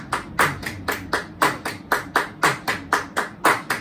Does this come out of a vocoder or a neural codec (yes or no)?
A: no